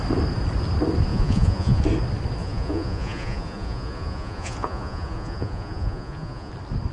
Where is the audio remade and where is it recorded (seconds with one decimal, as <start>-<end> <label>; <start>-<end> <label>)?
0.0-1.1 recorded; 1.1-1.8 remade; 1.8-2.4 recorded; 2.4-6.5 remade; 6.5-6.9 recorded

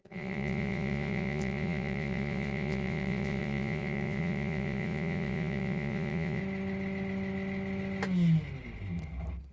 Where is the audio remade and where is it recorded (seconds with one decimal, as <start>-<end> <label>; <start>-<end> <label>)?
0.0-6.4 remade; 6.4-9.5 recorded